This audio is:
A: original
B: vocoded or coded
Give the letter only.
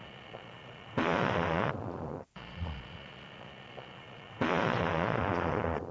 B